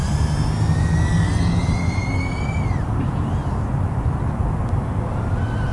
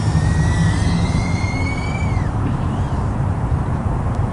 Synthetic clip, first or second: second